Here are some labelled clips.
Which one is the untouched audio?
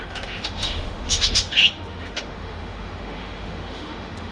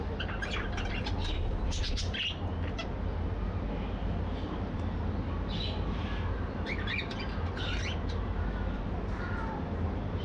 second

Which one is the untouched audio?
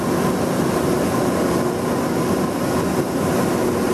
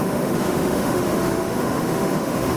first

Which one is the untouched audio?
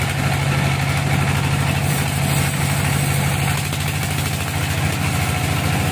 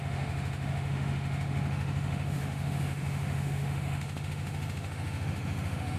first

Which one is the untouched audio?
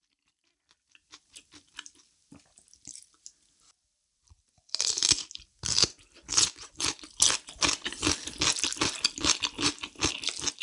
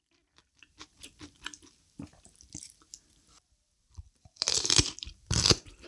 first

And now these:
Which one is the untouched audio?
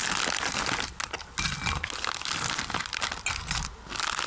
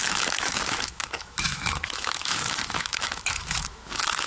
first